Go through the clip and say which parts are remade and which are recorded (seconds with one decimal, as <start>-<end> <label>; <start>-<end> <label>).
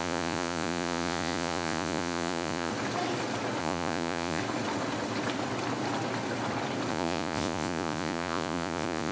0.0-2.7 remade; 2.7-3.6 recorded; 3.6-4.4 remade; 4.4-6.9 recorded; 6.9-9.1 remade